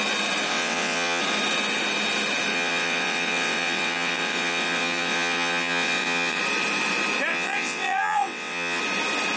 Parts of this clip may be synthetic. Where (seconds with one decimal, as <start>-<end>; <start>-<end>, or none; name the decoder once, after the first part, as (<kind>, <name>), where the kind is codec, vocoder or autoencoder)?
0.5-1.2 (vocoder, WaveNeXt); 2.5-6.4; 7.3-8.8

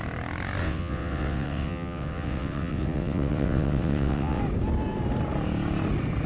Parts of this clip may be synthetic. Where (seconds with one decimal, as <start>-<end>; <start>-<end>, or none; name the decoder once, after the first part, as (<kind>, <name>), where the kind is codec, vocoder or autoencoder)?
0.6-4.4 (vocoder, WaveNeXt)

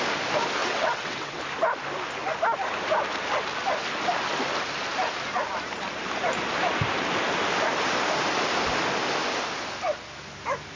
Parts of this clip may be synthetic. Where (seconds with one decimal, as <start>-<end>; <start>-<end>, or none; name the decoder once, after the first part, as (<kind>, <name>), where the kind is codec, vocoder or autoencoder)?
0.6-1.4 (vocoder, WaveNeXt)

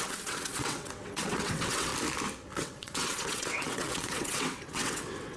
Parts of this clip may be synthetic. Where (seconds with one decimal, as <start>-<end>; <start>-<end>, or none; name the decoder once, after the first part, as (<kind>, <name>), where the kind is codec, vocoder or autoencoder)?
0.0-1.9 (vocoder, WaveNeXt); 2.6-5.4

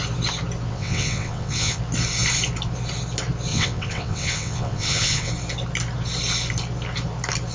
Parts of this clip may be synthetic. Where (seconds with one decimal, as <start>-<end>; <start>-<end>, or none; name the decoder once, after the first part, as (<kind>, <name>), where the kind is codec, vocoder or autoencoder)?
0.7-1.8 (vocoder, WaveNeXt); 3.5-5.3

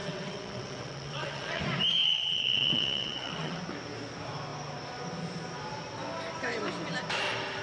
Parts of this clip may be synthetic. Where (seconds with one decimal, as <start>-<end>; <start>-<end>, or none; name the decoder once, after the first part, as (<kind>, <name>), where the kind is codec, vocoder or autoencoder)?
0.0-1.6 (vocoder, WaveNeXt); 2.0-3.6

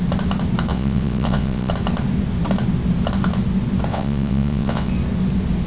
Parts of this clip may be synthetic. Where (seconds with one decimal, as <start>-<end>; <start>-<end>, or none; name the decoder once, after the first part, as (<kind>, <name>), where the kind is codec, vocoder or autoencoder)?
0.7-1.7 (vocoder, WaveNeXt); 3.9-4.9

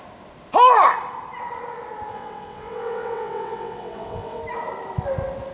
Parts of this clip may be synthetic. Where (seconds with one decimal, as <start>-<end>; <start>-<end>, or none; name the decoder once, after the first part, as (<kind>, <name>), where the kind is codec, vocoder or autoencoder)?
2.1-4.4 (vocoder, WaveNeXt)